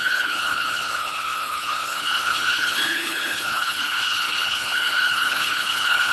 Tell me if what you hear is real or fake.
fake